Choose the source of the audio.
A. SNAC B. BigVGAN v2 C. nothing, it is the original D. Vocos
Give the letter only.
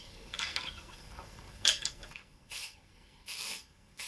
A